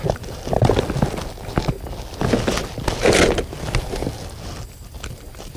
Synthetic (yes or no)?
no